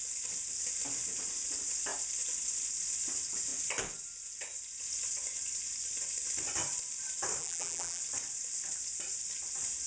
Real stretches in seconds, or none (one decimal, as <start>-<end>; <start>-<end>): 0.0-7.4; 8.0-9.9